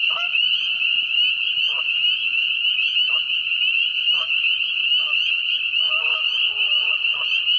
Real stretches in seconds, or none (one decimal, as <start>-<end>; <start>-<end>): 0.9-1.6